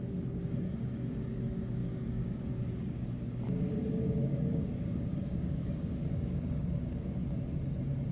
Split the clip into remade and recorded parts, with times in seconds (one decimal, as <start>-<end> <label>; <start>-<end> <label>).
0.0-7.2 remade; 7.2-8.1 recorded